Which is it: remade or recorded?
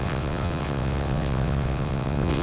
remade